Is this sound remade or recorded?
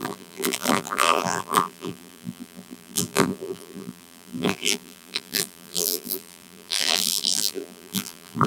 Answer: remade